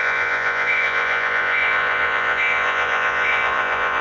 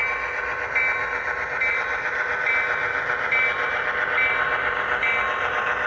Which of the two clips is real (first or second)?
second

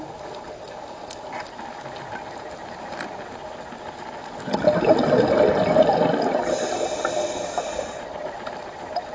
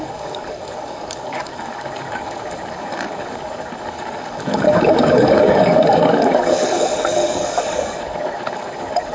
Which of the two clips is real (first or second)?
first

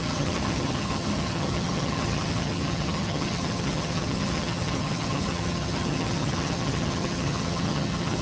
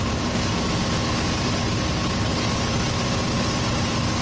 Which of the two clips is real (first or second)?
second